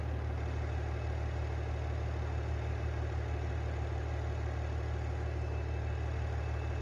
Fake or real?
real